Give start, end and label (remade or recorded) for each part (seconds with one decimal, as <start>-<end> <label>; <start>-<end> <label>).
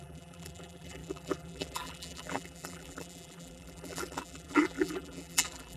0.0-5.8 remade